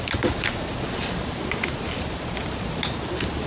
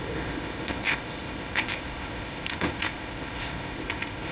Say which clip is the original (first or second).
first